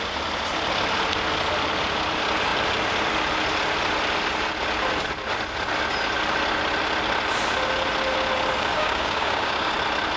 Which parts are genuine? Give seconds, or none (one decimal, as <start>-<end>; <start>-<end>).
0.0-8.7; 9.7-10.2